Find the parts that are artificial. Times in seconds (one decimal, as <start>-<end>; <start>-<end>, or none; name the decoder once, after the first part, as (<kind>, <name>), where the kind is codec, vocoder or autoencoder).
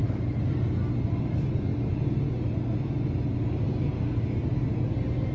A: none